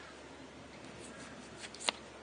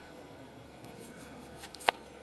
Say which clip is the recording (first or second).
first